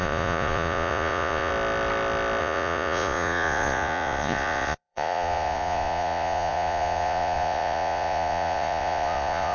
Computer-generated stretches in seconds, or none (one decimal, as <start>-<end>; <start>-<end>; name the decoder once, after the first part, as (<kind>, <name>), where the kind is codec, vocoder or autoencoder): 0.0-1.5 (vocoder, Vocos); 2.4-9.5